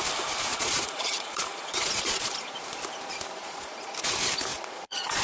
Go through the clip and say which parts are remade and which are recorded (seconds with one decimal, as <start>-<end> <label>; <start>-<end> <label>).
0.0-0.5 recorded; 0.5-2.3 remade; 2.3-3.4 recorded; 3.4-3.9 remade; 3.9-4.5 recorded; 4.5-5.2 remade